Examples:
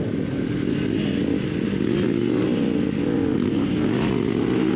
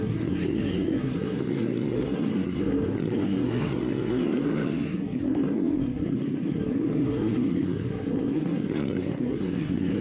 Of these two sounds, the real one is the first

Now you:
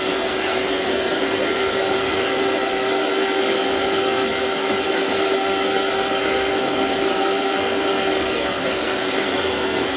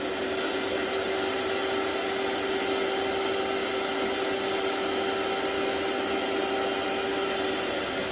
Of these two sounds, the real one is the second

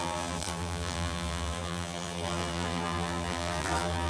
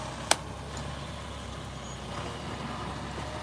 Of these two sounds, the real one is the second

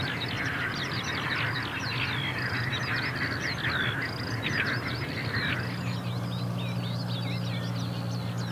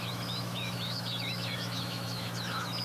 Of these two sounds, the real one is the first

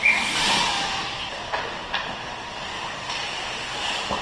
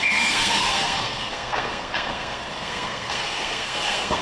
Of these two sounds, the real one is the first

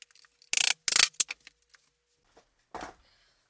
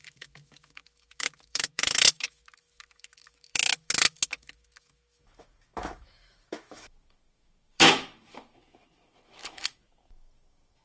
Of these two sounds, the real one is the first